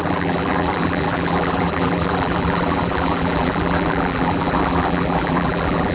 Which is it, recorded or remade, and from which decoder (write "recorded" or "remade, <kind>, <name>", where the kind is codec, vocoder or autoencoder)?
remade, vocoder, BigVGAN v2